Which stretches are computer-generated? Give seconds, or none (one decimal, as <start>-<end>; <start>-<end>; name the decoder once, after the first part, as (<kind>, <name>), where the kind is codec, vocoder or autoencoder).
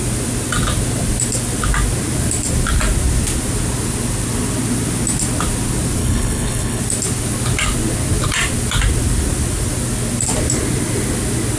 6.0-6.8 (codec, HILCodec)